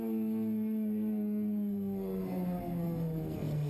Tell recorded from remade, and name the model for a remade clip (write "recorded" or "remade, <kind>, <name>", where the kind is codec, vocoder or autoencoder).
remade, codec, SNAC